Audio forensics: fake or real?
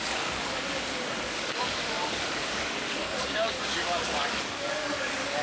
fake